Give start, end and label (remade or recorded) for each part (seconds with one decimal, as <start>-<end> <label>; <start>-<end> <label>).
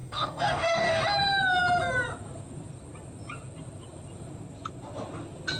0.0-1.0 remade; 1.0-5.6 recorded